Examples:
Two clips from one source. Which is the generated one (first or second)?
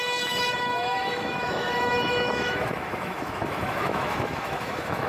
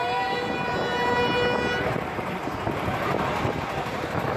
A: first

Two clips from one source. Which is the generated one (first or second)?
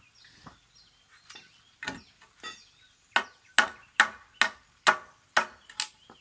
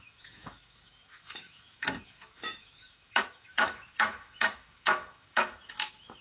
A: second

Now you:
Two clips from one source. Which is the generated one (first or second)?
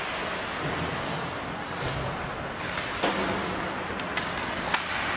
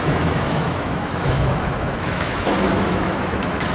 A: second